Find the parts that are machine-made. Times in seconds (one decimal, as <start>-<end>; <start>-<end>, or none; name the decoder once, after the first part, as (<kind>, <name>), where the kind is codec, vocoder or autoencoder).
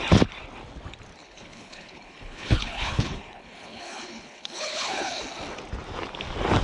1.2-5.2 (codec, HILCodec)